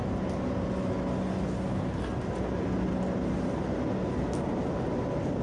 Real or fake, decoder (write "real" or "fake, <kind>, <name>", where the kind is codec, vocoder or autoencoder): real